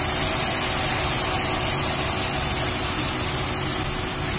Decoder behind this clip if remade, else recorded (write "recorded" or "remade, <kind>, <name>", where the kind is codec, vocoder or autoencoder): recorded